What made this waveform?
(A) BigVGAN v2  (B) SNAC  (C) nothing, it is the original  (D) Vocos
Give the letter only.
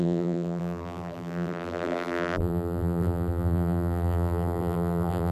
A